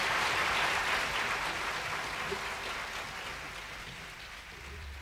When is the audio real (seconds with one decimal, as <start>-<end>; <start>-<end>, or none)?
0.8-3.8